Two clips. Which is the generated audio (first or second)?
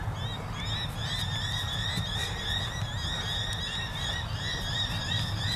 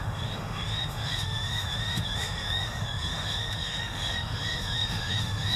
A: second